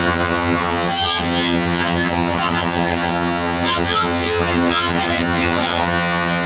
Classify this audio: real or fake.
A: fake